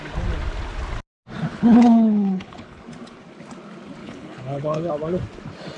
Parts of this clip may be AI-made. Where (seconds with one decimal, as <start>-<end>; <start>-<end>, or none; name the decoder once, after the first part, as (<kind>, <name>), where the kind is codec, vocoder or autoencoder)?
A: 1.5-2.8 (codec, HILCodec); 4.0-4.9